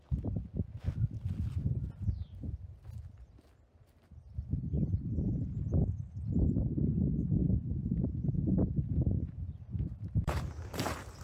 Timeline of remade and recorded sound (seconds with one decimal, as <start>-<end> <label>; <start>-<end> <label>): 0.0-7.4 recorded; 7.4-11.2 remade